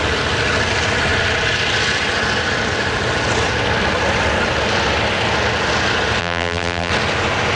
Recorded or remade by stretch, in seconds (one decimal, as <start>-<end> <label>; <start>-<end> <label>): 0.0-6.2 recorded; 6.2-6.9 remade; 6.9-7.6 recorded